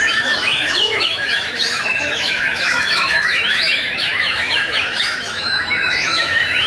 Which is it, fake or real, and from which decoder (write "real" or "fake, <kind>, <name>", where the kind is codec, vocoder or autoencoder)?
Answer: fake, autoencoder, DAC-VAE